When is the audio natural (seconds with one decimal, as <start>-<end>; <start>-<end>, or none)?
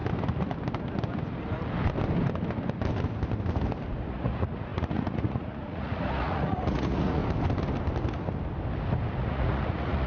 0.0-4.0; 7.2-9.2